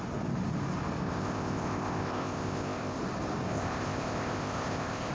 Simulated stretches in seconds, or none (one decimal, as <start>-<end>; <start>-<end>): 1.0-3.0; 3.5-5.1